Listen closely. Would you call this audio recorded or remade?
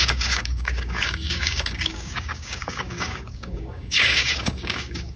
remade